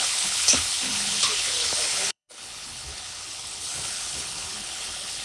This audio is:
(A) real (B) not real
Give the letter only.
B